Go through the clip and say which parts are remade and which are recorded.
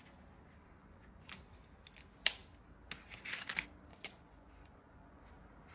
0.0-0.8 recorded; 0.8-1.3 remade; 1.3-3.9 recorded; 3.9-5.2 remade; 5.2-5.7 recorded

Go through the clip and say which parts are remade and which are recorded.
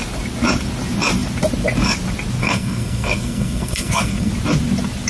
0.0-2.4 recorded; 2.4-4.3 remade; 4.3-5.1 recorded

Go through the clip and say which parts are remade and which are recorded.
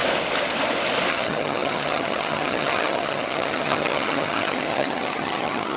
0.0-1.1 recorded; 1.1-5.8 remade